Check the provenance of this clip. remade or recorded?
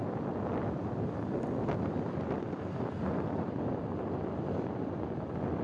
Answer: recorded